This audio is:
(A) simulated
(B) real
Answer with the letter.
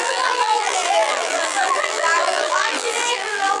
A